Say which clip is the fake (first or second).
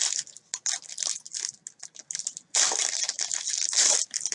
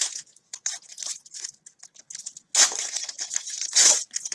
second